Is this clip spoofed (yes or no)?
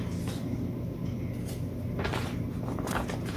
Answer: no